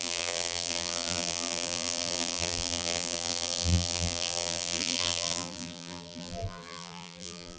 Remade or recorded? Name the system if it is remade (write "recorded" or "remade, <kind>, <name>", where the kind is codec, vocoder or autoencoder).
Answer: remade, vocoder, BigVGAN v2